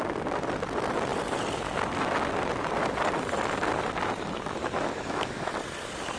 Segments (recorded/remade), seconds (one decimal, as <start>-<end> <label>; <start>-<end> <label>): 0.0-4.6 recorded; 4.6-5.5 remade; 5.5-6.2 recorded